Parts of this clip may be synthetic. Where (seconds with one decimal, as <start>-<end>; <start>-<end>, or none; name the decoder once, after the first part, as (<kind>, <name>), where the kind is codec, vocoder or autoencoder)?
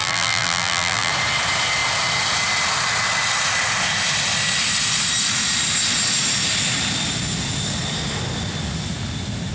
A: 0.0-1.1 (vocoder, BigVGAN v2)